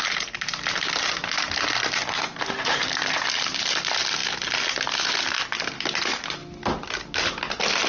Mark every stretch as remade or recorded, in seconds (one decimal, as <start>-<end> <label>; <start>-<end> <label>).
0.0-7.9 recorded